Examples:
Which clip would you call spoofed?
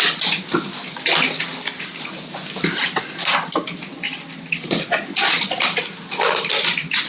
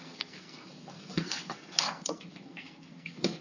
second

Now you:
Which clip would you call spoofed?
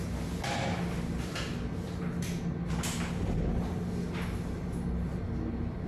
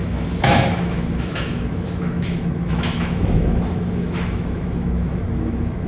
second